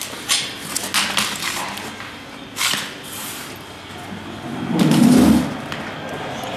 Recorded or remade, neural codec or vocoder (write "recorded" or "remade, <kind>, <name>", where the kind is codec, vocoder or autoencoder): recorded